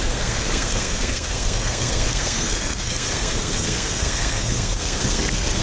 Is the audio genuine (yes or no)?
no